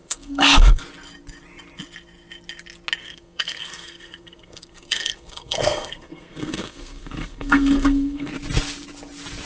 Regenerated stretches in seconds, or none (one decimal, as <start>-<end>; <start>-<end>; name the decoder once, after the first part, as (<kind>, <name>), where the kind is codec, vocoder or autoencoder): 0.0-0.8 (codec, SNAC); 3.0-8.3